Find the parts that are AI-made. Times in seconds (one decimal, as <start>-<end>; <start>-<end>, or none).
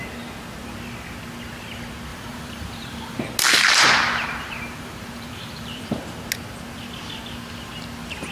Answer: 2.1-3.2; 4.2-6.2